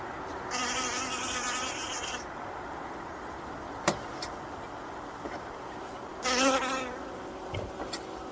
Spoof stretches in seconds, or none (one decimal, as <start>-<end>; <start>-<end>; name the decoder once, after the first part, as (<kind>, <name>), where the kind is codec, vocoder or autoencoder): 0.6-3.7 (vocoder, BigVGAN v2); 6.1-6.6